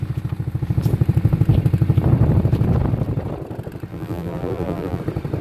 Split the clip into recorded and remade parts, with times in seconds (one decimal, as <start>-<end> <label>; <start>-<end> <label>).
0.0-3.9 recorded; 3.9-5.0 remade; 5.0-5.4 recorded